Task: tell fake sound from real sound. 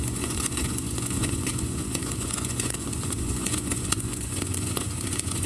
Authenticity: fake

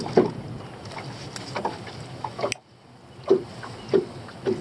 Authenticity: real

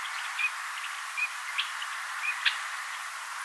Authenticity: real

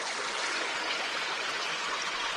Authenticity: fake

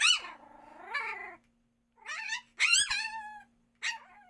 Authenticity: real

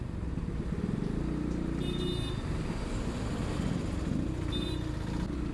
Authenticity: real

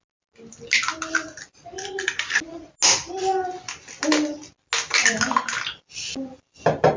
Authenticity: real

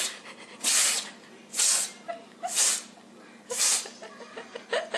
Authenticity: real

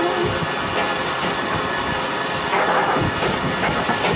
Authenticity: real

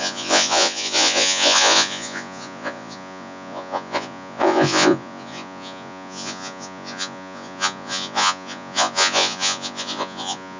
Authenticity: fake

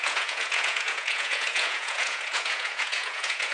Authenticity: fake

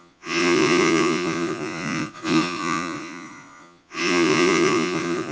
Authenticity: fake